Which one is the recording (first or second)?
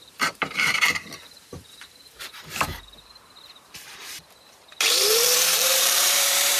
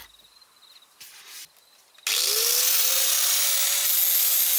second